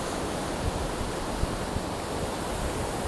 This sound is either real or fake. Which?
real